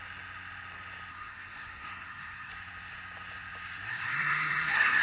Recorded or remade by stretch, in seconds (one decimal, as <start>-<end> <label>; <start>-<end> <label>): 0.0-1.1 recorded; 1.1-2.5 remade; 2.5-3.9 recorded; 3.9-5.0 remade